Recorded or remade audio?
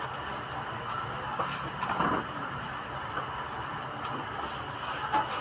recorded